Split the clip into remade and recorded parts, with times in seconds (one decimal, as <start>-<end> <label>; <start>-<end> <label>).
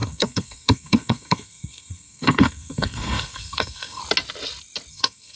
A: 0.0-4.0 remade; 4.0-4.9 recorded; 4.9-5.4 remade